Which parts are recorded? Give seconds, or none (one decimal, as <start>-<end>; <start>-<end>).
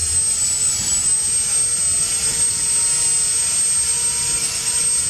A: 0.0-5.1